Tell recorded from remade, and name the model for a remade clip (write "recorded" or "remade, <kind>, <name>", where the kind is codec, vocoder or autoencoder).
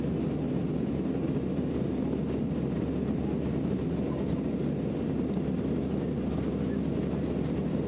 recorded